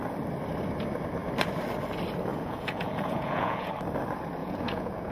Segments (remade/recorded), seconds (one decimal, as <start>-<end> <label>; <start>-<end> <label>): 0.0-2.3 recorded; 2.3-3.7 remade; 3.7-4.4 recorded; 4.4-5.1 remade